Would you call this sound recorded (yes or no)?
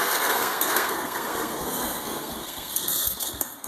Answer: no